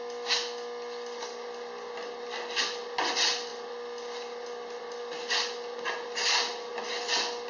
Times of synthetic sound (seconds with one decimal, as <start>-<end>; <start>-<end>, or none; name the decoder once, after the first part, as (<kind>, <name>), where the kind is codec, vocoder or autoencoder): none